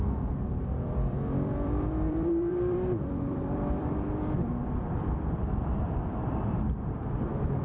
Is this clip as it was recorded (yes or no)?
no